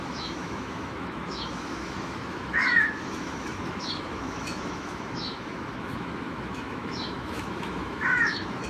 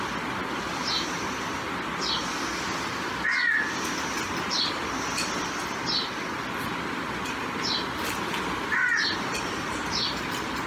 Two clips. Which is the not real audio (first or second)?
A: first